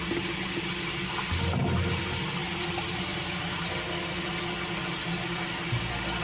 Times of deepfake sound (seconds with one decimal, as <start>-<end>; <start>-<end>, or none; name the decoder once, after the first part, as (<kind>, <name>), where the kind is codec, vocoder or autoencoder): none